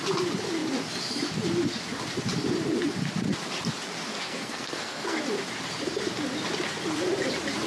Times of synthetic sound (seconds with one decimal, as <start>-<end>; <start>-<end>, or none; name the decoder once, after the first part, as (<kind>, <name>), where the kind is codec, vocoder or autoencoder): 4.1-5.2 (codec, SNAC)